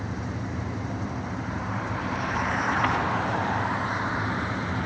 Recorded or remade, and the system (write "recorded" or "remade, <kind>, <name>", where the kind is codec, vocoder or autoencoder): remade, vocoder, BigVGAN v2